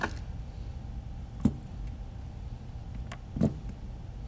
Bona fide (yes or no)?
yes